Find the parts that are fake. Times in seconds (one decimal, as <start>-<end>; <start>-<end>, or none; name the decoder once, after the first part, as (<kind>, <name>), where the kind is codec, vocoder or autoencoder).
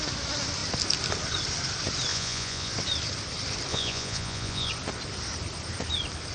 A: 2.1-2.7 (vocoder, Vocos); 3.7-4.7